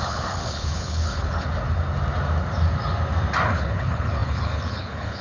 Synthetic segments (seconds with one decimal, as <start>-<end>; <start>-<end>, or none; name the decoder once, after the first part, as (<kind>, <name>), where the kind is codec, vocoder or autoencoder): 0.0-1.5 (codec, HILCodec); 3.5-5.2